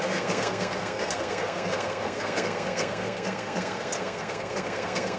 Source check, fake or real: fake